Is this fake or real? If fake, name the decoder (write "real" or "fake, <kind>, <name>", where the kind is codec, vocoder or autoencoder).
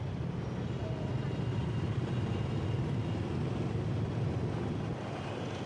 real